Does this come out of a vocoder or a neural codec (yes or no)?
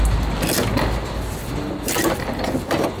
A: no